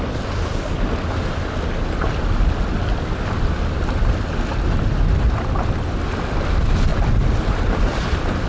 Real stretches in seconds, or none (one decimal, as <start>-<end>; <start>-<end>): 0.0-8.5